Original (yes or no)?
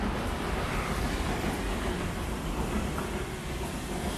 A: yes